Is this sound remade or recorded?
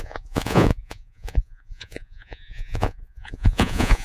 remade